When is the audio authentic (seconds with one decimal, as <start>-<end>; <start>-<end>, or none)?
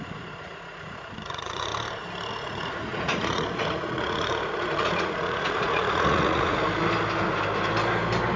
1.7-2.3; 6.6-8.4